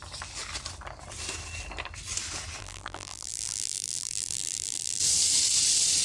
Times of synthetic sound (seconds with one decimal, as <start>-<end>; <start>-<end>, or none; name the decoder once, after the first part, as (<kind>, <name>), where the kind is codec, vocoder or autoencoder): 2.6-5.0 (vocoder, BigVGAN v2)